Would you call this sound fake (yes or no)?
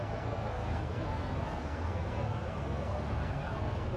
yes